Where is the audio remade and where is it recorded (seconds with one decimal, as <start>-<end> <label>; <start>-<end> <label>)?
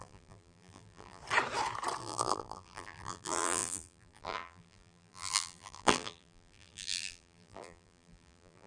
0.0-1.2 remade; 1.2-2.0 recorded; 2.0-8.7 remade